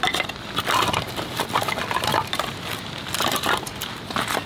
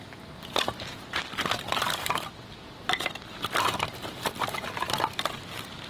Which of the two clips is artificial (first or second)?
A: second